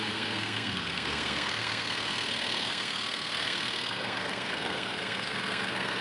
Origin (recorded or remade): remade